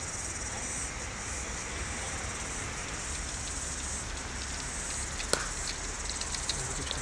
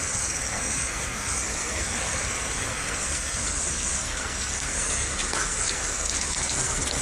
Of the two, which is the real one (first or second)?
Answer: first